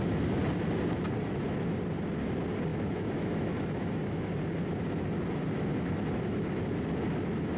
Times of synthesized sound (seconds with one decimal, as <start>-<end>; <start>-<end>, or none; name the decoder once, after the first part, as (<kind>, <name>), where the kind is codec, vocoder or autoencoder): 2.7-4.3 (autoencoder, DAC-VAE)